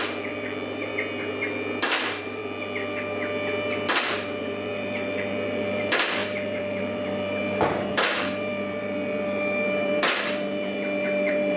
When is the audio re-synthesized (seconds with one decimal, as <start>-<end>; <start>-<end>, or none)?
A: 0.0-0.9; 2.0-2.4; 4.0-11.6